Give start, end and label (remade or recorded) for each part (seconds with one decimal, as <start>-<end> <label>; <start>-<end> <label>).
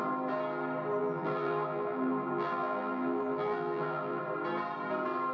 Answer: 0.0-1.0 recorded; 1.0-4.2 remade; 4.2-5.3 recorded